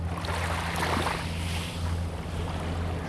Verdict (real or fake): real